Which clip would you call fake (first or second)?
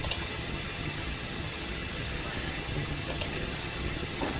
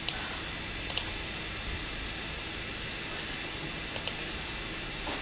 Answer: first